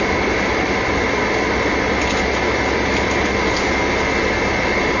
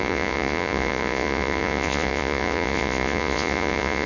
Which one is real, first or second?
first